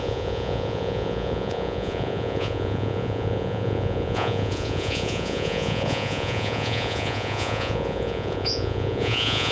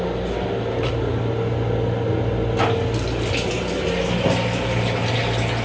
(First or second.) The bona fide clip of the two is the second